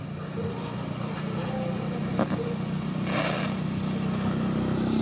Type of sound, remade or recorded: recorded